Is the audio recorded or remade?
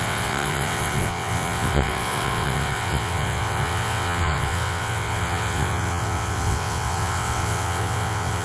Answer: remade